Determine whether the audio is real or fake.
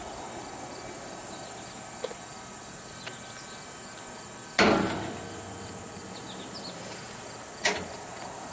real